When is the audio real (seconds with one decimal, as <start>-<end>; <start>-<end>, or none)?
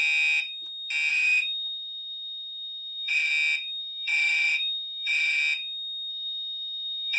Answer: 0.0-1.1; 3.3-3.8; 5.4-6.1